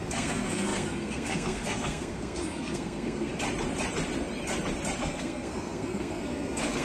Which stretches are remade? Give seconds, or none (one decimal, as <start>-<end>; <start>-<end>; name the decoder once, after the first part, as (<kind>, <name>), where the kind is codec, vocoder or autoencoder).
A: 0.0-3.3 (codec, SNAC); 5.0-6.8